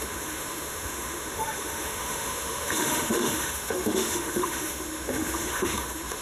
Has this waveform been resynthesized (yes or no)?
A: yes